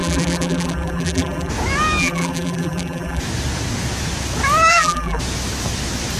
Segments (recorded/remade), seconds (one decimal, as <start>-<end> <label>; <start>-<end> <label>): 0.0-1.5 remade; 1.5-2.0 recorded; 2.0-3.2 remade; 3.2-4.7 recorded; 4.7-5.2 remade; 5.2-6.2 recorded